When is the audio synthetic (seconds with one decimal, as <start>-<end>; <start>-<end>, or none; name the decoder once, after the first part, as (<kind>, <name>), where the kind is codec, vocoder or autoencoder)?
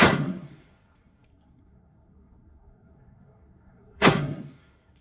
0.0-5.0 (codec, SNAC)